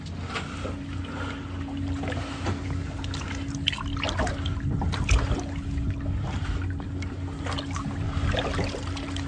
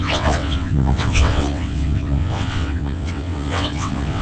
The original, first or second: first